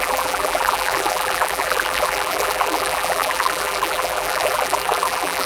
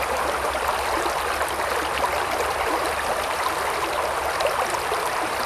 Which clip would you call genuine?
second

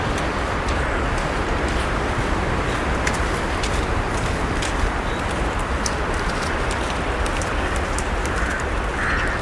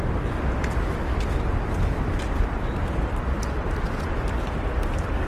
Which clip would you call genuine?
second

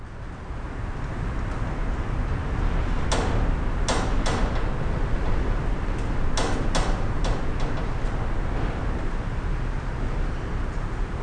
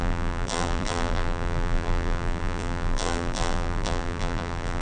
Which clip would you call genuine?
first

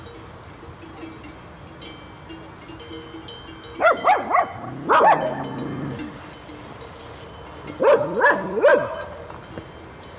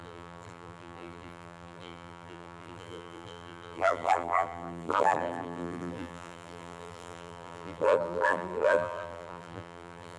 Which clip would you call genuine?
first